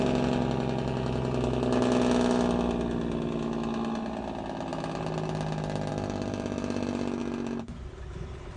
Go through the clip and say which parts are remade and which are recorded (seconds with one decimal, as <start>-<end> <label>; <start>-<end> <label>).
0.0-8.6 recorded